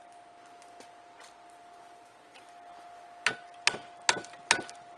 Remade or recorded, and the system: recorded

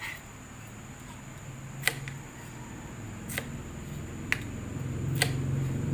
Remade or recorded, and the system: recorded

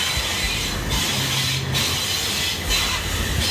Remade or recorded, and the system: recorded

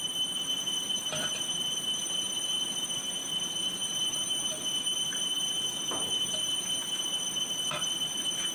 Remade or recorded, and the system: remade, vocoder, BigVGAN v2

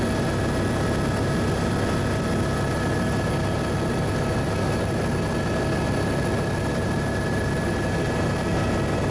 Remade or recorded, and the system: recorded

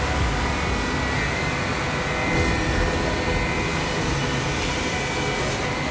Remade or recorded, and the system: recorded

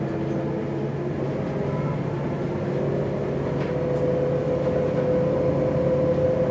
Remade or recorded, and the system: recorded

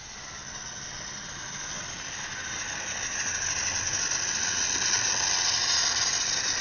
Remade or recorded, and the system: recorded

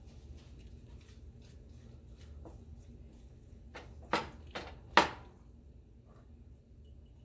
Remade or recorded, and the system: recorded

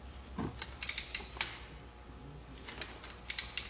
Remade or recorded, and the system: recorded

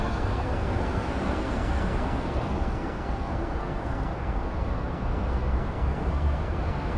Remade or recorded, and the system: remade, codec, SNAC